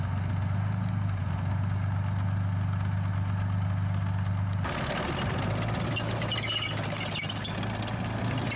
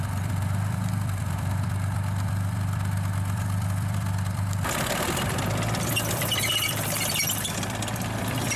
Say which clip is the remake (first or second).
second